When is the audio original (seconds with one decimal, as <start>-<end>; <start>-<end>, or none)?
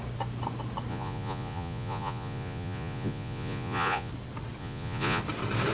0.0-0.9; 4.1-4.6; 5.2-5.7